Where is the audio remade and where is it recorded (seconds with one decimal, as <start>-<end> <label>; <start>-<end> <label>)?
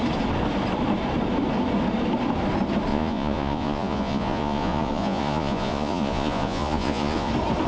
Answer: 0.0-2.9 recorded; 2.9-7.3 remade; 7.3-7.7 recorded